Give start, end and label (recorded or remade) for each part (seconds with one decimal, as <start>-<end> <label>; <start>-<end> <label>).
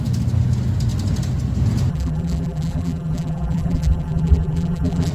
0.0-1.9 recorded; 1.9-5.1 remade